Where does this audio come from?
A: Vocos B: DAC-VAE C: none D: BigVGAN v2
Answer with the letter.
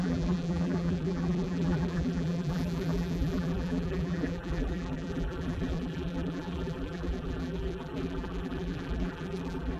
D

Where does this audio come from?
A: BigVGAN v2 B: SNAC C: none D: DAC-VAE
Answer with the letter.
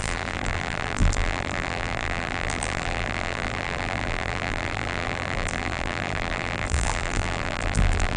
A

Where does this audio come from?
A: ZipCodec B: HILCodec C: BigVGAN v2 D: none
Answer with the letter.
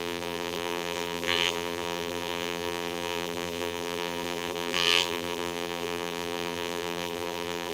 C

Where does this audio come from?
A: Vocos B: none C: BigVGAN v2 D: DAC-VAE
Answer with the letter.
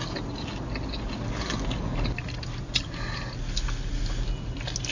B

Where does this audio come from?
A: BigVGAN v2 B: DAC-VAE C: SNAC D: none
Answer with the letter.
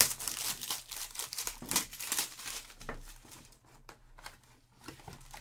A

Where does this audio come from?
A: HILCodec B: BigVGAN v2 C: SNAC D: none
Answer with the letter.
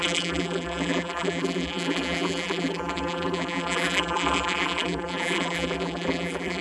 B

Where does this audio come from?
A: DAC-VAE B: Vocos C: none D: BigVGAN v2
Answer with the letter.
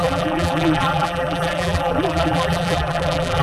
D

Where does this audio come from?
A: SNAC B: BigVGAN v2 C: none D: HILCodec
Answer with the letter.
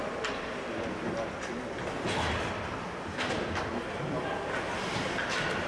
C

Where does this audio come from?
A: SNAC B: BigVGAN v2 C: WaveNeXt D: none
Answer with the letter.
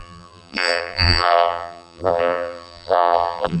B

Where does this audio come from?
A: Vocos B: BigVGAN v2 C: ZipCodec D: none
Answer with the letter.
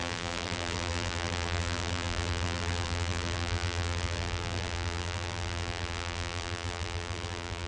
B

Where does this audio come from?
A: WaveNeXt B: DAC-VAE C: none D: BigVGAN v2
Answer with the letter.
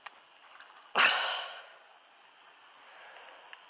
C